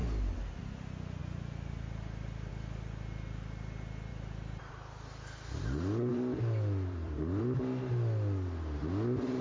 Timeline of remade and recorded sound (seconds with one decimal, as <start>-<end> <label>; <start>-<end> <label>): 0.0-6.1 recorded; 6.1-7.4 remade; 7.4-9.4 recorded